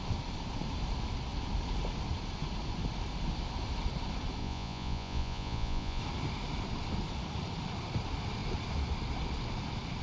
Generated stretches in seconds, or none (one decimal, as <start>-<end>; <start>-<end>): 4.4-6.0